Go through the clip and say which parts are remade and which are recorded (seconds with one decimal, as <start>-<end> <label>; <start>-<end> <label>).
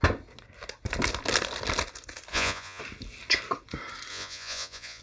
0.0-2.3 recorded; 2.3-2.8 remade; 2.8-4.1 recorded; 4.1-5.0 remade